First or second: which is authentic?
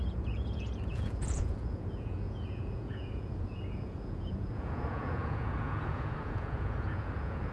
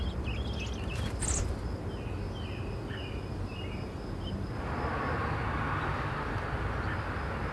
second